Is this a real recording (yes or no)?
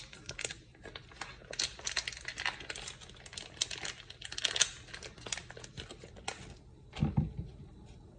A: yes